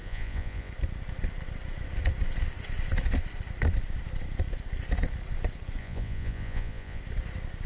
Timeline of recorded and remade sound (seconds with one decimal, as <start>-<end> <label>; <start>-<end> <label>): 0.0-0.7 remade; 0.7-5.8 recorded; 5.8-7.0 remade; 7.0-7.7 recorded